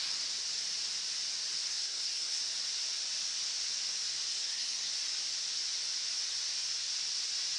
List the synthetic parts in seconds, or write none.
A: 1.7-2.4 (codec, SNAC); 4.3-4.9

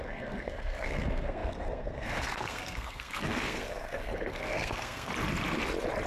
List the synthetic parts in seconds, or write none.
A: 0.0-5.1 (codec, SNAC)